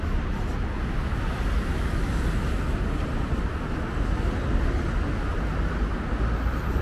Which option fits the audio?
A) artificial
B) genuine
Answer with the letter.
B